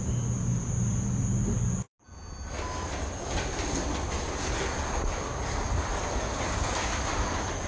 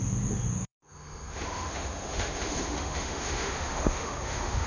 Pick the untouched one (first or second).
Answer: first